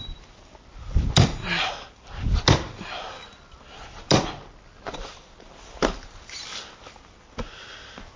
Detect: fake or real real